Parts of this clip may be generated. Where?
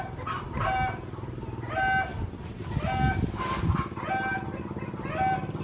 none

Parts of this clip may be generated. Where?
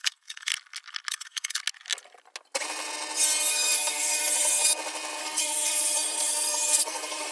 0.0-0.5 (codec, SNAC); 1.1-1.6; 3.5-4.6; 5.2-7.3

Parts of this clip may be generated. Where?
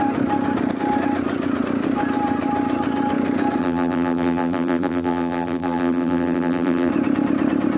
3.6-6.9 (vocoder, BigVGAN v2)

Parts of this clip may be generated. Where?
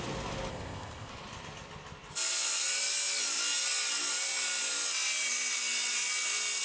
0.5-1.1 (codec, ZipCodec)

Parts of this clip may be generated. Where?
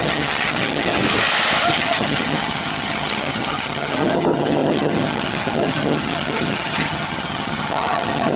0.0-1.0 (vocoder, HiFi-GAN); 1.7-8.4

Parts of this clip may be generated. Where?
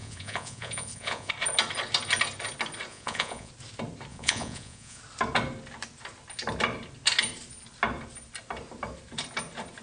0.0-1.3 (vocoder, Vocos); 2.9-3.5; 4.1-5.0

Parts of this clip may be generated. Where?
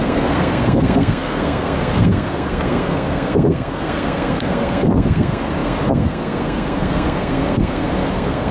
0.0-8.5 (codec, SNAC)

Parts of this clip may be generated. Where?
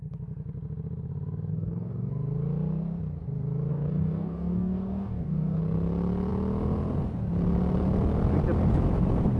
1.5-2.1 (codec, DAC); 3.7-5.6